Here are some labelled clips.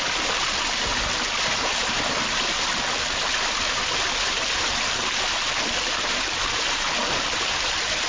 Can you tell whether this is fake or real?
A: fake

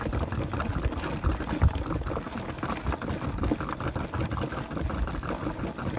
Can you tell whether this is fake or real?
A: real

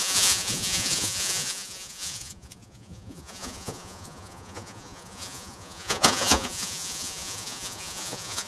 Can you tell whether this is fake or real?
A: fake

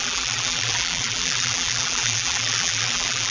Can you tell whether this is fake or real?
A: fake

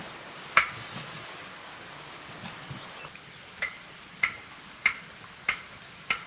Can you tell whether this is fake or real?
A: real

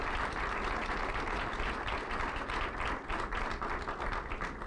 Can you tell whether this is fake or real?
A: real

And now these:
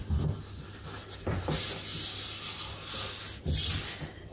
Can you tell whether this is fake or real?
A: real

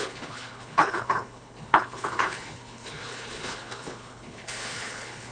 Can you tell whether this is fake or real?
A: fake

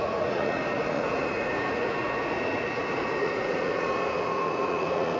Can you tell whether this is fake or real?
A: fake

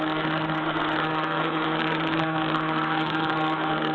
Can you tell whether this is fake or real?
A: fake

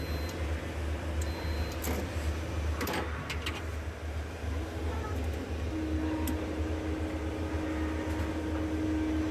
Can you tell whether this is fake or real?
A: real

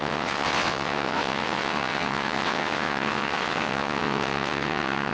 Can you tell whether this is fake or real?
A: fake